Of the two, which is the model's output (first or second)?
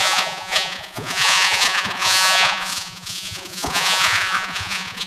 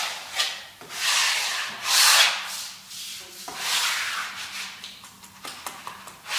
first